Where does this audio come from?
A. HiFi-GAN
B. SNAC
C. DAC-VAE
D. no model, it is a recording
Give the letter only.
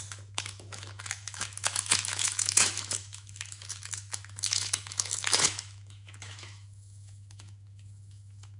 C